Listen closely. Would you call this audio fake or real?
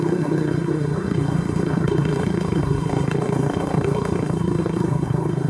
fake